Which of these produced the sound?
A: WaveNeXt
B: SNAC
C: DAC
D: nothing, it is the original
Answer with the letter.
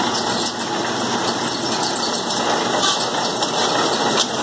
D